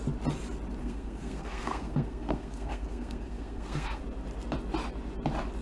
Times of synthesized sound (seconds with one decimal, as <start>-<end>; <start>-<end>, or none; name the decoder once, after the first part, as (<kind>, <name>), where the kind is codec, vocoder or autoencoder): 0.8-4.0 (codec, SNAC)

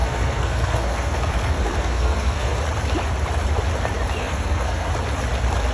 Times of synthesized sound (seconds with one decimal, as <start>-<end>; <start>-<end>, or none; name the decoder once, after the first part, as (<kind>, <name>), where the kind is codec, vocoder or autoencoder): 0.0-2.6 (codec, SNAC); 4.2-4.9

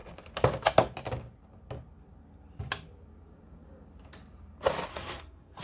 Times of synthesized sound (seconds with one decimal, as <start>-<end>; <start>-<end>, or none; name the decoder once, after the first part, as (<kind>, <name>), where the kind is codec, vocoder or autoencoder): 4.9-5.6 (codec, SNAC)

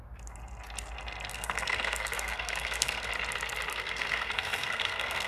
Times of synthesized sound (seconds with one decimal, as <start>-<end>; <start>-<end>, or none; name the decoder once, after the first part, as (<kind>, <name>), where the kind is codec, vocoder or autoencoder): 1.3-3.1 (codec, SNAC); 3.7-5.3

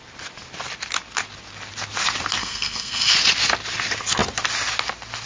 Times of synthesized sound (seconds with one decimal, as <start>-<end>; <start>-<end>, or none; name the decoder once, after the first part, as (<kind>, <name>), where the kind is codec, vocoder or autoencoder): 2.4-3.1 (codec, SNAC)

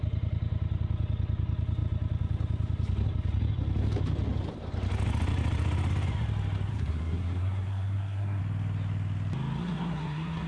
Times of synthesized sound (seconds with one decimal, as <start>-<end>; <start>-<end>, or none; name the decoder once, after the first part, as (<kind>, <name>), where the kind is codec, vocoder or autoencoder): 6.7-8.4 (codec, SNAC); 9.6-10.5

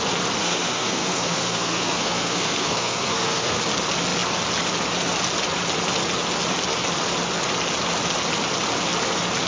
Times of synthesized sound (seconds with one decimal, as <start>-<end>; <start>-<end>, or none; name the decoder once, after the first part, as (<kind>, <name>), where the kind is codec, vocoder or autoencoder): 0.4-3.6 (codec, SNAC)

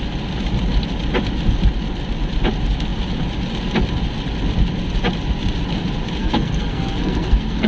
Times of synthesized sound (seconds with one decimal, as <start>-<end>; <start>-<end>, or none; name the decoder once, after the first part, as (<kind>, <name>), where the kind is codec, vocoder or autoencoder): 6.2-7.7 (codec, SNAC)